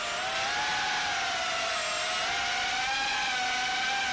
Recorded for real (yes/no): yes